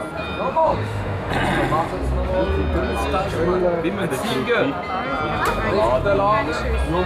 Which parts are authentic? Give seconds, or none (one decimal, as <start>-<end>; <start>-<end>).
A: 0.0-0.5; 1.3-7.1